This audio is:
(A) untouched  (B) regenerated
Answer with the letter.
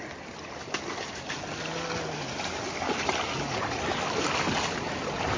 A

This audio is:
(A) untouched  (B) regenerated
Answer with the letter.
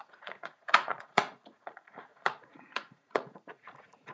B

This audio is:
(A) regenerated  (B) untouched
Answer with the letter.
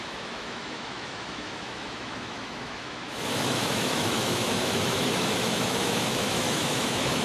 A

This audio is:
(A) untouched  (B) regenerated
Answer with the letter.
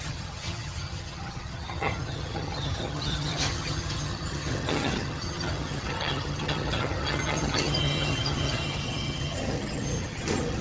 B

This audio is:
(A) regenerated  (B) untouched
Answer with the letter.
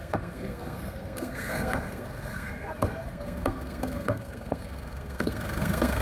A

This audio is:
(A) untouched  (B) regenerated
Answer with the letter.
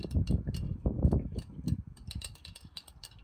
B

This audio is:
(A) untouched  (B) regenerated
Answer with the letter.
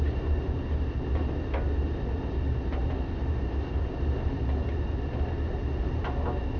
A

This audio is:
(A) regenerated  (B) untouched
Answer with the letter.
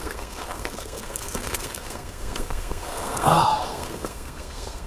A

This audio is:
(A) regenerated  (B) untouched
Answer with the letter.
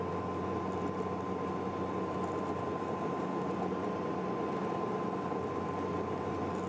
B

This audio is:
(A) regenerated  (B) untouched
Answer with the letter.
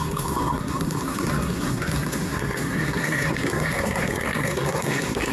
A